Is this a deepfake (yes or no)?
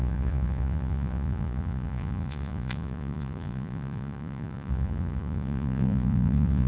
yes